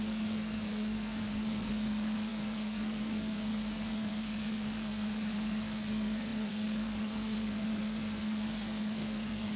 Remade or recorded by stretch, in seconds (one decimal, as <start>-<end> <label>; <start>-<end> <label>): 0.0-9.6 remade